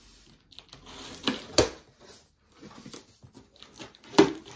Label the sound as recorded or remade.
recorded